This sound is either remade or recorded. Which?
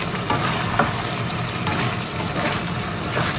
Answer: recorded